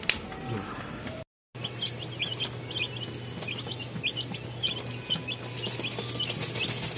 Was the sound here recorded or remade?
recorded